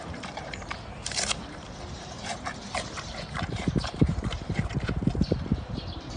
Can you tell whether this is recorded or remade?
remade